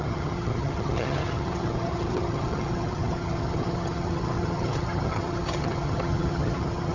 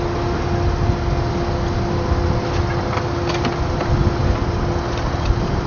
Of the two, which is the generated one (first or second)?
first